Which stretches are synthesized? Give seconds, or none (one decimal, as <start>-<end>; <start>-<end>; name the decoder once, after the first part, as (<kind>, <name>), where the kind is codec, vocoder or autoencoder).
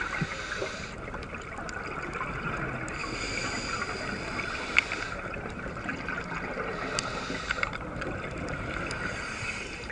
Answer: none